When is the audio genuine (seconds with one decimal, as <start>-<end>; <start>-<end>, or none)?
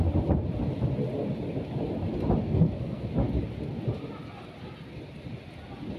0.0-2.4; 3.1-6.0